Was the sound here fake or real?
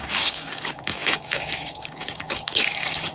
fake